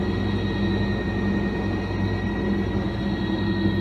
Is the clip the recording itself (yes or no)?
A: yes